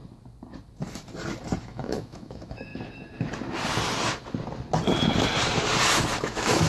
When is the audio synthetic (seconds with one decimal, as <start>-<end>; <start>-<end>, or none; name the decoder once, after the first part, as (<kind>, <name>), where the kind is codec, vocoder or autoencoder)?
1.6-2.7 (autoencoder, DAC-VAE); 6.2-6.7